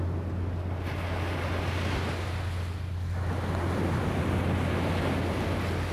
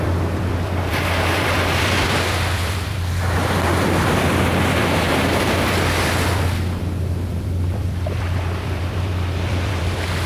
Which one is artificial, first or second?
second